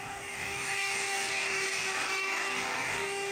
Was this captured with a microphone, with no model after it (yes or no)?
no